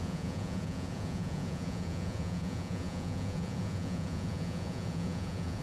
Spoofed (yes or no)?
yes